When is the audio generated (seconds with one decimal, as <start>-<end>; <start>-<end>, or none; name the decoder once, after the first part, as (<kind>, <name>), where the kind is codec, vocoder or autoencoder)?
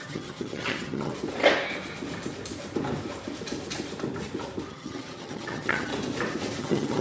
0.0-1.1 (vocoder, HiFi-GAN); 4.7-5.9; 6.6-7.0